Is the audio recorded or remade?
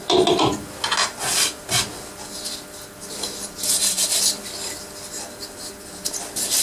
recorded